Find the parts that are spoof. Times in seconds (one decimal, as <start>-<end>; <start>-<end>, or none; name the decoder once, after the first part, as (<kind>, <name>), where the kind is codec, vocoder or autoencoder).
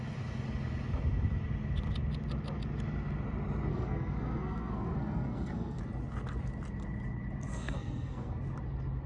3.7-5.8 (codec, SNAC); 7.5-8.4